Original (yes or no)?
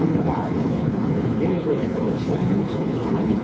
no